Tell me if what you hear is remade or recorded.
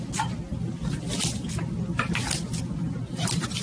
recorded